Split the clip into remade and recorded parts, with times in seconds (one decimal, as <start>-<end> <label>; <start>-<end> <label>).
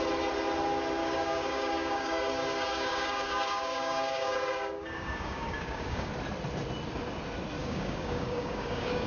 0.0-1.0 recorded; 1.0-6.1 remade; 6.1-7.6 recorded; 7.6-9.1 remade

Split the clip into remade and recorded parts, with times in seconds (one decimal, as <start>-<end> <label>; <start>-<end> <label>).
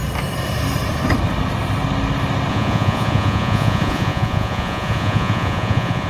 0.0-2.5 recorded; 2.5-6.1 remade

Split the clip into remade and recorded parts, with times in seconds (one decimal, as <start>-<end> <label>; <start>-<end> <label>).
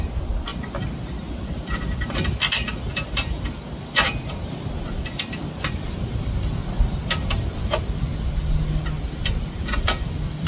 0.0-0.5 remade; 0.5-1.4 recorded; 1.4-6.6 remade; 6.6-9.6 recorded; 9.6-10.5 remade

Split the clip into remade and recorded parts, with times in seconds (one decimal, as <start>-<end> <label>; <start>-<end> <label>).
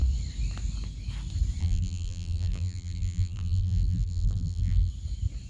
0.0-1.6 recorded; 1.6-4.9 remade; 4.9-5.5 recorded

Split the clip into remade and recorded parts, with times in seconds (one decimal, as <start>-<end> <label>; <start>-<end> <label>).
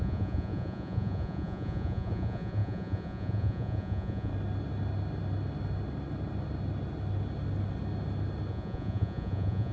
0.0-4.3 remade; 4.3-8.5 recorded; 8.5-9.7 remade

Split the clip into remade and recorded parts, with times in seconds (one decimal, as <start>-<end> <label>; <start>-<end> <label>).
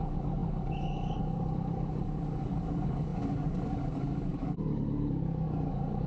0.0-6.1 remade